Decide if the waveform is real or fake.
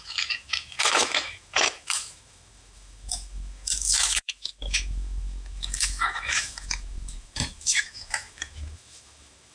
fake